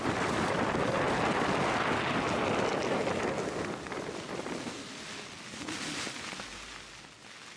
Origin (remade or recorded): recorded